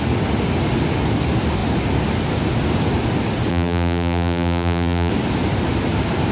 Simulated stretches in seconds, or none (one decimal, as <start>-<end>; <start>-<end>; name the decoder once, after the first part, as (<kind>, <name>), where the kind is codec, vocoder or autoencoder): 3.5-5.1 (vocoder, BigVGAN v2)